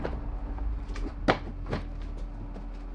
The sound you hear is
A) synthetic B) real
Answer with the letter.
B